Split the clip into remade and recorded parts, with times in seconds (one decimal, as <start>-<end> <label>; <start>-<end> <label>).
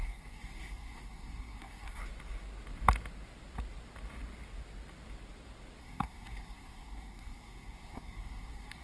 0.0-2.0 remade; 2.0-5.8 recorded; 5.8-8.8 remade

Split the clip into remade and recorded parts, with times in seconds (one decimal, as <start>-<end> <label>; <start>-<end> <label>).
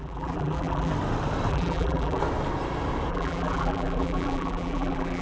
0.0-0.9 remade; 0.9-1.5 recorded; 1.5-2.2 remade; 2.2-3.1 recorded; 3.1-5.2 remade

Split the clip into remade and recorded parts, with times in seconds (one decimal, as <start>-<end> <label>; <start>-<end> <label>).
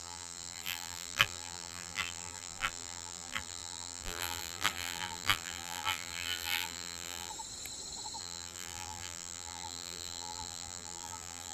0.0-7.3 remade; 7.3-8.2 recorded; 8.2-11.5 remade